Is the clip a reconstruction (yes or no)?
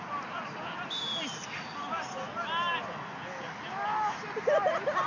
no